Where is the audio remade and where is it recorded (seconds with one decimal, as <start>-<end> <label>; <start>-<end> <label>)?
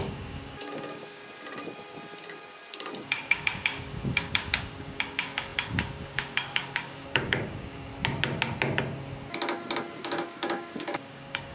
0.0-1.2 remade; 1.2-3.1 recorded; 3.1-7.9 remade; 7.9-10.0 recorded; 10.0-11.5 remade